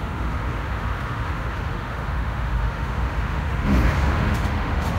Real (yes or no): no